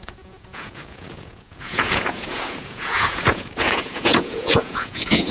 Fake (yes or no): yes